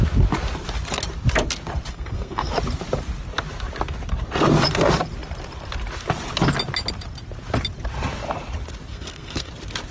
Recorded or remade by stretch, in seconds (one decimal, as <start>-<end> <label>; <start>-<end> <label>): 0.0-1.9 recorded; 1.9-2.5 remade; 2.5-8.9 recorded; 8.9-9.5 remade; 9.5-9.9 recorded